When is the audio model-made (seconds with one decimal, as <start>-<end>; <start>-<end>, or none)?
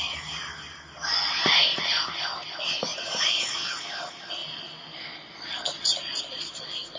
none